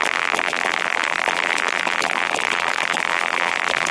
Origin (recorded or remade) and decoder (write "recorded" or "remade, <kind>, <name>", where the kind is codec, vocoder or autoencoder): remade, vocoder, BigVGAN v2